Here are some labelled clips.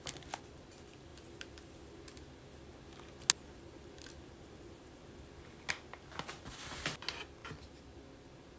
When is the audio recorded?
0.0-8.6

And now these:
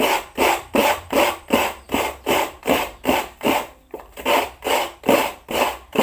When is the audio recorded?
0.0-0.8; 4.4-5.2

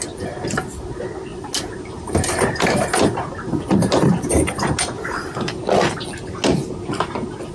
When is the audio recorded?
0.0-1.3; 5.3-7.5

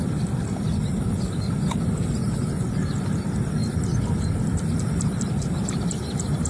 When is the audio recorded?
0.0-6.5

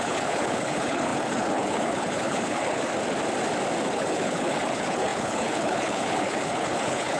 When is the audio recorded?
2.9-3.9